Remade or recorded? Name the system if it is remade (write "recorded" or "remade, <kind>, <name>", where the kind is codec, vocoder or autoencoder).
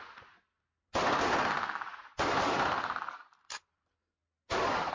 recorded